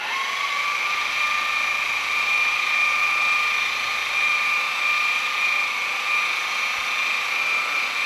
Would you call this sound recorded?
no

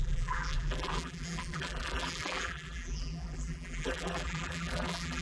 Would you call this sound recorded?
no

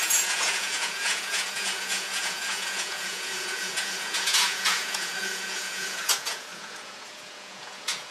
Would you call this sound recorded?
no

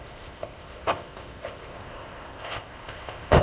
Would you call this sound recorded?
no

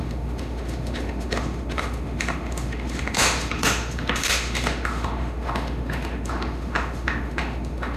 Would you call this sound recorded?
no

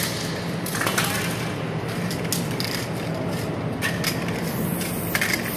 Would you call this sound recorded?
yes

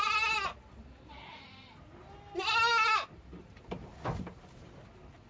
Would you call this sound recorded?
yes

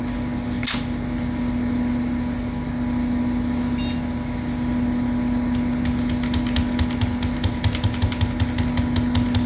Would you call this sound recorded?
yes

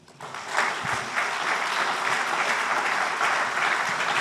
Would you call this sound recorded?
yes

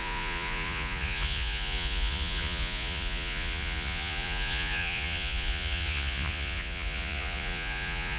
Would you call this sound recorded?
no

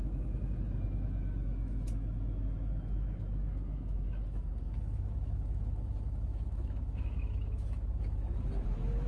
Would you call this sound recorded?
no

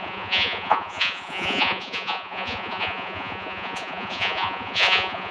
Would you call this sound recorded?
no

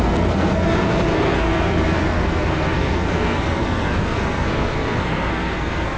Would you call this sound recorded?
no